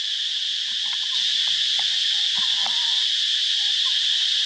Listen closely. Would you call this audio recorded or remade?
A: remade